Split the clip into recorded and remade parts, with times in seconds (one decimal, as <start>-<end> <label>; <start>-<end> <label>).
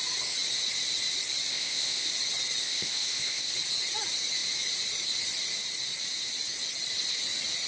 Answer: 0.0-1.5 recorded; 1.5-2.1 remade; 2.1-2.6 recorded; 2.6-3.5 remade; 3.5-7.7 recorded